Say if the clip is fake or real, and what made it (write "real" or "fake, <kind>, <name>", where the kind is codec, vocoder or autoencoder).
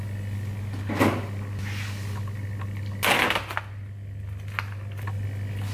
real